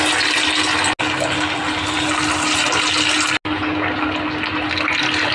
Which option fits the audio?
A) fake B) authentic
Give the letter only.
B